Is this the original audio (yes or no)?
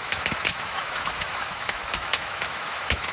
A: no